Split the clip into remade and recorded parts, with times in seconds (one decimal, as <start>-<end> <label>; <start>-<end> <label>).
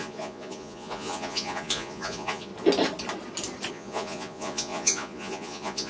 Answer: 0.0-2.5 remade; 2.5-3.7 recorded; 3.7-5.9 remade